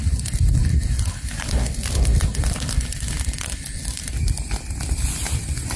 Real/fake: fake